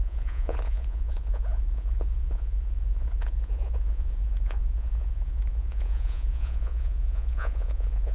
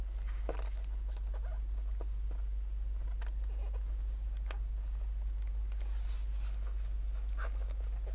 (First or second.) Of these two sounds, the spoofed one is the first